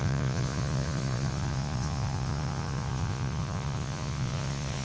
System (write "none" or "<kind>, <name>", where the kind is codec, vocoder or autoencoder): vocoder, Vocos